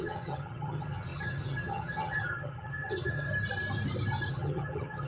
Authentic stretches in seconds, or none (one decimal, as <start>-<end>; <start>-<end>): 3.3-4.3